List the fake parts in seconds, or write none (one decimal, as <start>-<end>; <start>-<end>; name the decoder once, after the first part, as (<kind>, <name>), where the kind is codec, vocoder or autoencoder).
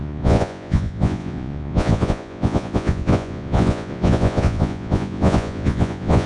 0.0-6.3 (vocoder, Vocos)